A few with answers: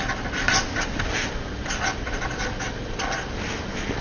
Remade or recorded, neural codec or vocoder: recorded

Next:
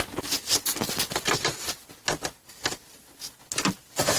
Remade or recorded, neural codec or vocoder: recorded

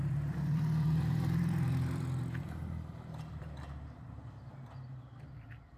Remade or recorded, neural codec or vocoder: remade, vocoder, BigVGAN v2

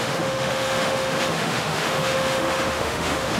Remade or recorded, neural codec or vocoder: remade, autoencoder, DAC-VAE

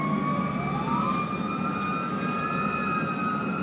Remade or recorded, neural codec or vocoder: recorded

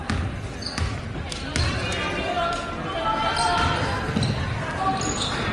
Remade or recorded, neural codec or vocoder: recorded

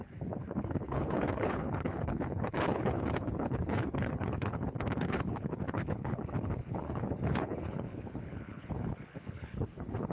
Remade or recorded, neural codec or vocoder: remade, codec, HILCodec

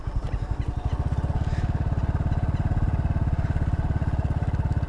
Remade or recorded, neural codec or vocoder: recorded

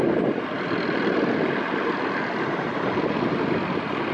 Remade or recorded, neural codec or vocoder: recorded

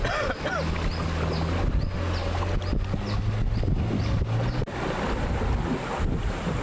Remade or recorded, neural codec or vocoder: recorded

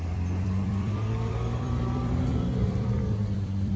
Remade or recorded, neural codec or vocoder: remade, vocoder, BigVGAN v2